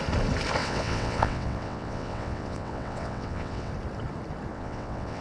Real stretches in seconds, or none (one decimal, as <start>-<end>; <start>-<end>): 0.0-0.6; 3.7-4.5